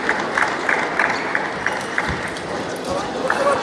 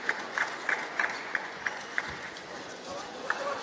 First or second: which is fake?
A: second